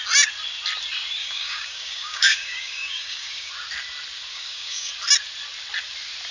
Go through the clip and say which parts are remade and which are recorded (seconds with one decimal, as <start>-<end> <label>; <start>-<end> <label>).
0.0-1.2 recorded; 1.2-3.5 remade; 3.5-4.3 recorded; 4.3-4.9 remade; 4.9-6.3 recorded